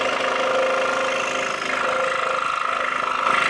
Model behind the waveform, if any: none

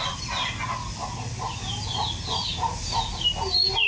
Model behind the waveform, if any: none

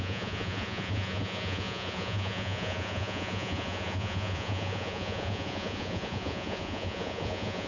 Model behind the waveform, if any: vocoder, Vocos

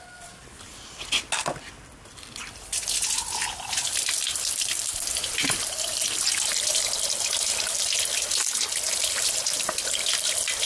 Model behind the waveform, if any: none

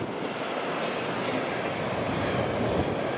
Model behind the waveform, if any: none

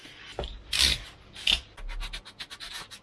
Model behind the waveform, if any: none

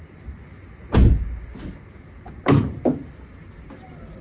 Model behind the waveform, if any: none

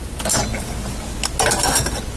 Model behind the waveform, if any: none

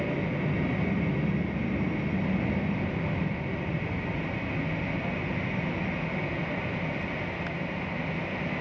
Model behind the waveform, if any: none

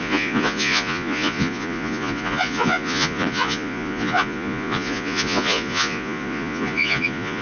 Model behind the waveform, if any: vocoder, Vocos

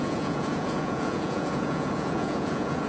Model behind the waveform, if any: vocoder, Vocos